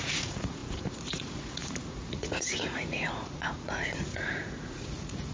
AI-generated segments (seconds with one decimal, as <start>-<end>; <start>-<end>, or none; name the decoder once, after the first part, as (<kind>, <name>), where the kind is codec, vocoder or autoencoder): 0.0-5.3 (vocoder, Vocos)